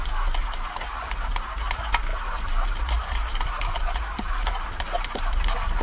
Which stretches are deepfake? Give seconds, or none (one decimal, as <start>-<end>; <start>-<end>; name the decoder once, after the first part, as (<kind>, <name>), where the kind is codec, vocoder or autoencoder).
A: 0.4-1.7 (vocoder, BigVGAN v2); 2.1-5.8